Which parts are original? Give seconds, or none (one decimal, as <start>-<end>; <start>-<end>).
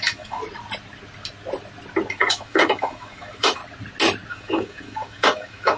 0.4-2.1; 3.6-4.3